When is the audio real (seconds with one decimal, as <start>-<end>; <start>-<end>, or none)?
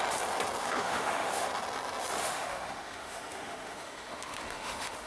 0.0-0.6; 1.5-2.2